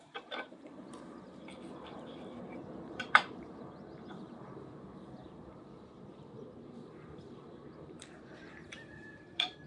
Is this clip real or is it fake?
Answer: fake